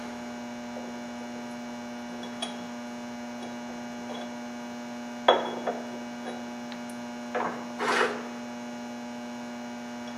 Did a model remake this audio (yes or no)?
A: no